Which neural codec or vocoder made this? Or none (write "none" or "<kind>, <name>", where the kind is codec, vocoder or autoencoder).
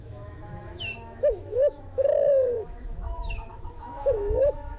autoencoder, DAC-VAE